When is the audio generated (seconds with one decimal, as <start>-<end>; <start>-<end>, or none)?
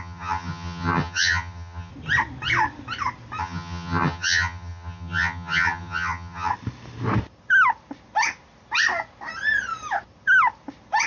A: 0.0-1.9; 3.4-6.5